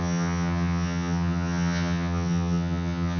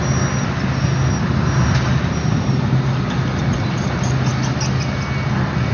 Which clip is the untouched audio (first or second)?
second